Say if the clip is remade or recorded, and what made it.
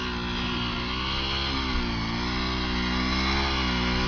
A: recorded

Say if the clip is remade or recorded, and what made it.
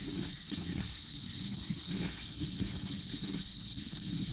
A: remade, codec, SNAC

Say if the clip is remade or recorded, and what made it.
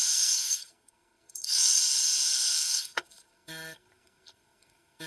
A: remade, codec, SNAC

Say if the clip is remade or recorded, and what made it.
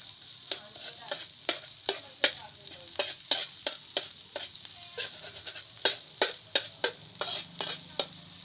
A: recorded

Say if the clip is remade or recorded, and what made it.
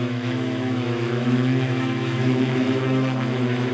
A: remade, autoencoder, DAC-VAE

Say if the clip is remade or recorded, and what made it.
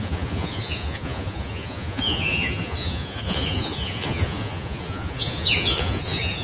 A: remade, vocoder, Vocos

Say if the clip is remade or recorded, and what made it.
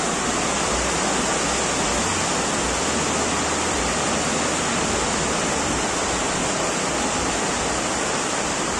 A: recorded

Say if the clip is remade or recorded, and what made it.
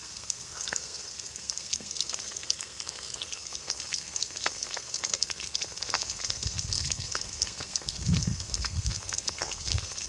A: remade, codec, SNAC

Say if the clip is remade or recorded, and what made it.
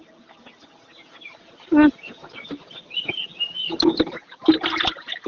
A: recorded